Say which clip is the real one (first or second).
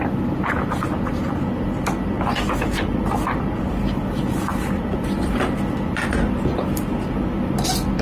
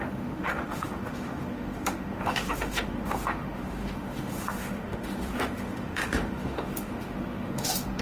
first